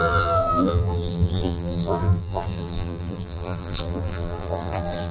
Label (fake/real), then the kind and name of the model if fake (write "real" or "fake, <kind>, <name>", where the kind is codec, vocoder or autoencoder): fake, vocoder, BigVGAN v2